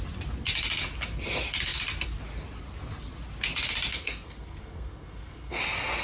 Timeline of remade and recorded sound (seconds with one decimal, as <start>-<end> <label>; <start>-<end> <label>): 0.0-3.9 recorded; 3.9-5.6 remade; 5.6-6.0 recorded